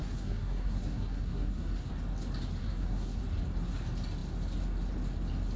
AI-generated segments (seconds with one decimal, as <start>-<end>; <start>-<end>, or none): 0.0-1.9; 2.6-3.2